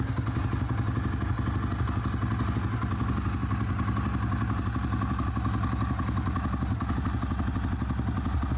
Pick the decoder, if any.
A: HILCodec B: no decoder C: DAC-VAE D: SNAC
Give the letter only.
B